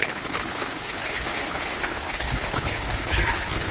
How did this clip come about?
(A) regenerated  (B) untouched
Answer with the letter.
A